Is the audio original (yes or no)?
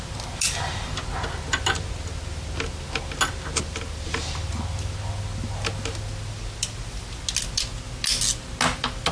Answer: yes